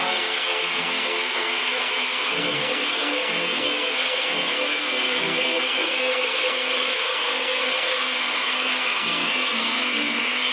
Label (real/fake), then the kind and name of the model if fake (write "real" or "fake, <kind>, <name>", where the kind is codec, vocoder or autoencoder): fake, codec, SNAC